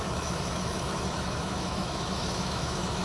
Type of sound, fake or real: fake